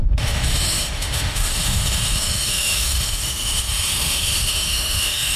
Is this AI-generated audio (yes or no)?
yes